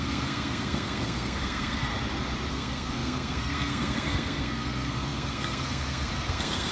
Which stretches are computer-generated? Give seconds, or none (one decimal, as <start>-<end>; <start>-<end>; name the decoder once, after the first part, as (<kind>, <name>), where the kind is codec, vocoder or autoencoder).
0.0-1.9 (codec, SNAC); 2.5-6.7